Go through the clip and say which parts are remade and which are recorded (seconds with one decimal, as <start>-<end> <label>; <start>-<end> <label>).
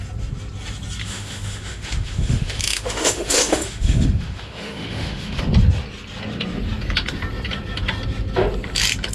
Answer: 0.0-1.0 recorded; 1.0-5.4 remade; 5.4-9.1 recorded